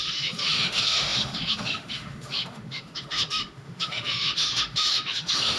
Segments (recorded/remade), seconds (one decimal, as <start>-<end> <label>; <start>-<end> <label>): 0.0-5.6 remade